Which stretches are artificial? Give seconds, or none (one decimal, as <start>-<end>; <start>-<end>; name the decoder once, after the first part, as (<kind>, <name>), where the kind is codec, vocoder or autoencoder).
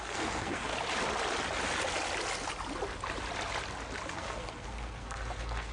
0.0-0.7 (codec, SNAC); 4.1-5.7